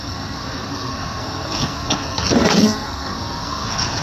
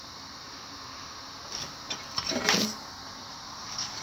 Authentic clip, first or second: second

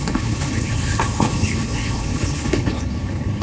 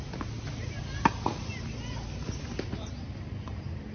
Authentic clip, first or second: second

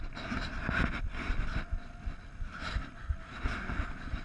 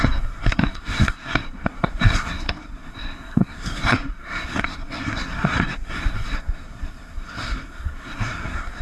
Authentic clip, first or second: first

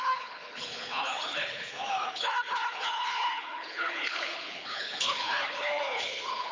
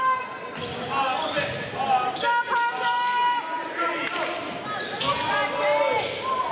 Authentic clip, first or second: second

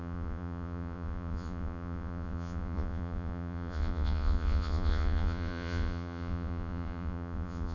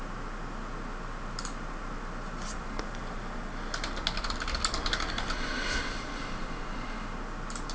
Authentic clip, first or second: second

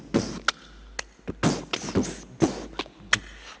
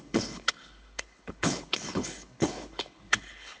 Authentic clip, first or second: first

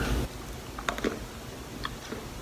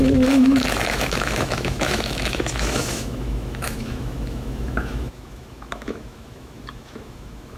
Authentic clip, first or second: first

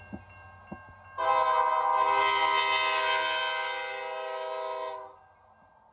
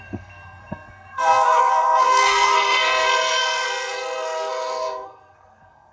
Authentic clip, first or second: first